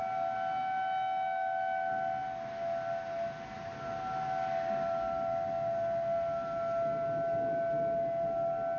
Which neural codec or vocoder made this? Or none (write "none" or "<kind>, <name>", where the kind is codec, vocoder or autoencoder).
none